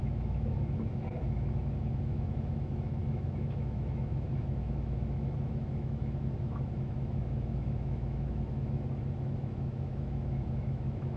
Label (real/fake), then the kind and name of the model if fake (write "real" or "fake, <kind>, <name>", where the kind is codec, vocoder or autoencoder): fake, autoencoder, DAC-VAE